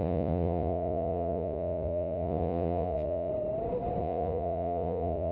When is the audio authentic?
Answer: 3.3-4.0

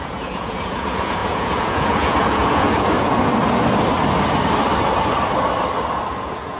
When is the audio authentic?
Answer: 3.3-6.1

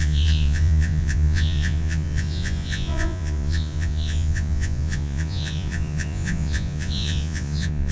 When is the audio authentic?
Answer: none